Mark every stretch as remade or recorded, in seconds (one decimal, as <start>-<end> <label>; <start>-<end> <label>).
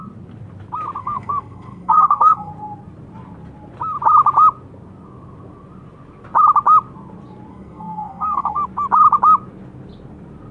0.0-1.0 recorded; 1.0-2.5 remade; 2.5-7.5 recorded; 7.5-8.6 remade; 8.6-10.5 recorded